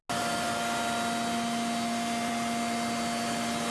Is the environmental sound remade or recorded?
recorded